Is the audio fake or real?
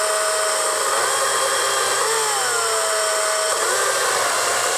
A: real